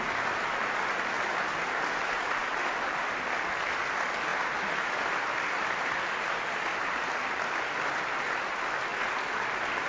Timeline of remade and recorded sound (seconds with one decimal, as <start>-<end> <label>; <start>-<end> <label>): 0.0-9.9 recorded